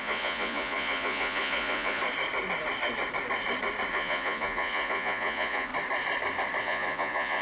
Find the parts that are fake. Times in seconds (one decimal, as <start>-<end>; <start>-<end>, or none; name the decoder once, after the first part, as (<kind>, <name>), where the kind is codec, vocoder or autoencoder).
0.0-2.0 (vocoder, Vocos); 3.9-5.7; 6.6-7.4